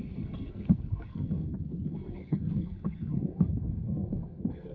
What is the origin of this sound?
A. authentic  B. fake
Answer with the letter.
B